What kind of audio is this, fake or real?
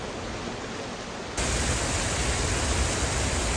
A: real